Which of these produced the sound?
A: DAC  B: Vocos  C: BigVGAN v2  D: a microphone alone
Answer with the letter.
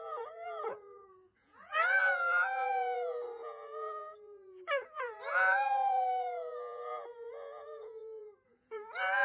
B